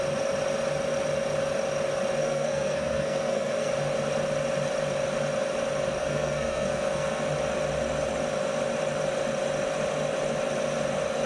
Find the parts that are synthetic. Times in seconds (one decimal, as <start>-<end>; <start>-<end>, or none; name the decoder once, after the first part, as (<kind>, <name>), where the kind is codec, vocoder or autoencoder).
2.2-3.7 (codec, SNAC); 6.0-7.2